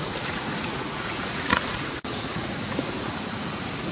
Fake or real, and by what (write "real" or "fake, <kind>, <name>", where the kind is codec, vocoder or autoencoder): fake, vocoder, Vocos